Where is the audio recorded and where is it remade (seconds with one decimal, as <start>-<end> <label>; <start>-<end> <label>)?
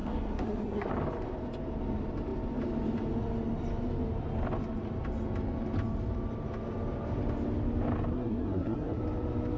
0.0-0.9 remade; 0.9-8.1 recorded; 8.1-9.0 remade; 9.0-9.6 recorded